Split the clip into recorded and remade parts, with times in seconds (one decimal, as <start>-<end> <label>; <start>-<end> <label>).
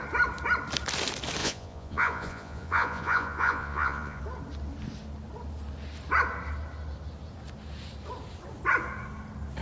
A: 0.0-1.4 recorded; 1.4-4.2 remade; 4.2-9.6 recorded